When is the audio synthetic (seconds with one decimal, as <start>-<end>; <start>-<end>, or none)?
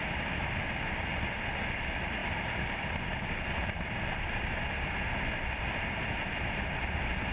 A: none